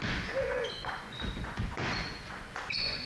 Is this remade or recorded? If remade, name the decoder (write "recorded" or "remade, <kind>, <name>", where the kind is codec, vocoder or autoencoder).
remade, vocoder, Vocos